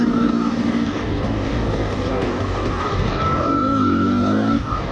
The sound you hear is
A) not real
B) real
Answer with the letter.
A